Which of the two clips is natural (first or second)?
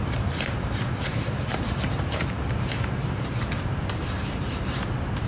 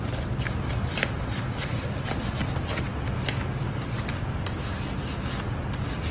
second